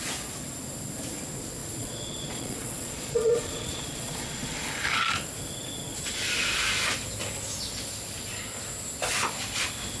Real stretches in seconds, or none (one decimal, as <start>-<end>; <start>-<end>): 0.0-1.6; 4.7-10.0